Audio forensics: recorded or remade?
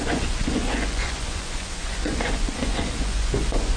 remade